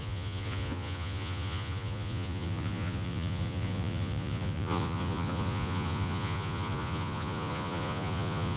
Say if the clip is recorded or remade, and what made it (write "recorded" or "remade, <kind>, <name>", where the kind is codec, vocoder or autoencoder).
remade, vocoder, Vocos